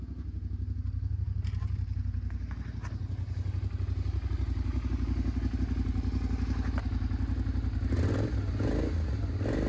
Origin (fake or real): real